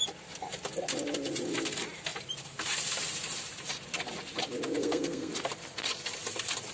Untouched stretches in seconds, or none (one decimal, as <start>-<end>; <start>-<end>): 0.0-4.8; 5.3-6.7